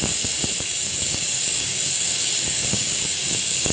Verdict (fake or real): fake